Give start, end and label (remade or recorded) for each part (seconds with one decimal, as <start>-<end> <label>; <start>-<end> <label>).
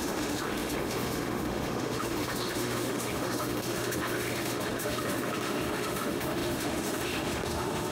0.0-7.9 remade